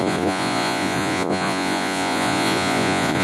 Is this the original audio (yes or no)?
no